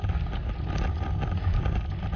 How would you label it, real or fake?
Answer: real